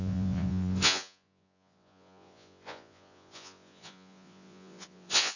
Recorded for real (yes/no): no